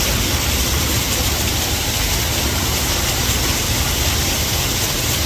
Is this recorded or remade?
recorded